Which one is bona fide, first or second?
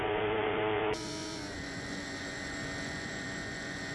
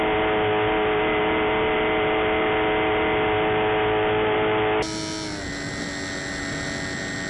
second